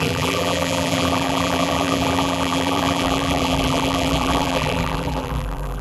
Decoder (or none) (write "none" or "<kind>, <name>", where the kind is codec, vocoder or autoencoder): vocoder, BigVGAN v2